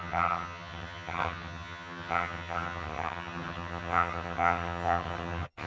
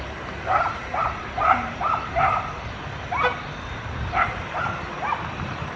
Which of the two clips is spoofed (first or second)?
first